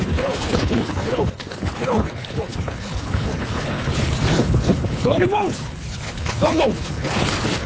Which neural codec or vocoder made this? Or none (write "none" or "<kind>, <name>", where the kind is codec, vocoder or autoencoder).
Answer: codec, HILCodec